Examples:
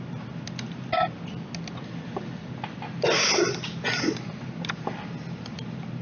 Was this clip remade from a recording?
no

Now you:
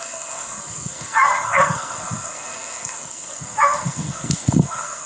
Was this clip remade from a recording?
yes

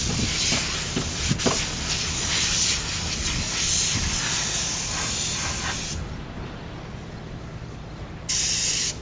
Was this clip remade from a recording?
no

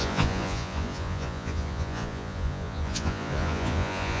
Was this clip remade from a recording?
yes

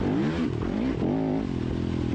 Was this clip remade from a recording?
no